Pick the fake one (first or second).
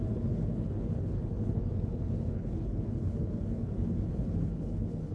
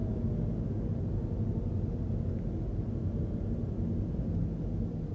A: first